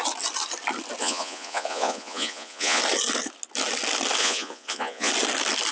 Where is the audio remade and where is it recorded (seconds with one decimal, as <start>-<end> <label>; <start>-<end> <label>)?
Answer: 0.0-1.0 recorded; 1.0-2.8 remade; 2.8-4.2 recorded; 4.2-5.1 remade; 5.1-5.7 recorded

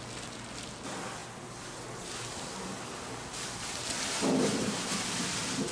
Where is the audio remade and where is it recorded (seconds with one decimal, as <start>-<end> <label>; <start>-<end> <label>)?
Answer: 0.0-5.7 recorded

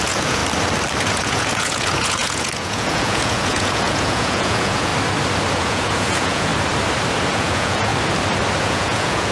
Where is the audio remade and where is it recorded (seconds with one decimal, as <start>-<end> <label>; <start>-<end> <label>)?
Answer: 0.0-0.4 remade; 0.4-1.0 recorded; 1.0-4.9 remade; 4.9-5.5 recorded; 5.5-6.5 remade; 6.5-7.3 recorded; 7.3-7.9 remade; 7.9-8.6 recorded; 8.6-9.3 remade

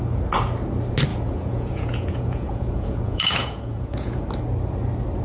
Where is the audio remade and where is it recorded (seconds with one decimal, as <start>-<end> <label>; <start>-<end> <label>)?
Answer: 0.0-1.1 recorded; 1.1-4.2 remade; 4.2-5.2 recorded

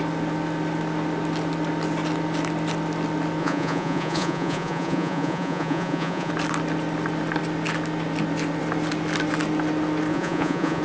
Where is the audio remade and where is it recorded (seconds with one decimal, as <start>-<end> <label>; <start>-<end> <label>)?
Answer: 0.0-3.4 recorded; 3.4-6.3 remade; 6.3-10.1 recorded; 10.1-10.8 remade

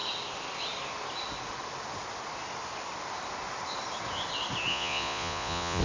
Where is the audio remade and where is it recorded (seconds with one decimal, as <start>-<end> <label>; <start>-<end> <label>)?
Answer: 0.0-4.7 recorded; 4.7-5.8 remade